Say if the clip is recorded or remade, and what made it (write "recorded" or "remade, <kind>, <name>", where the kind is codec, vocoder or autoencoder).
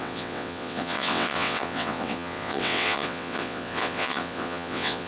remade, vocoder, WaveNeXt